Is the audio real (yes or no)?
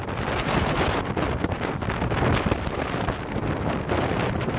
yes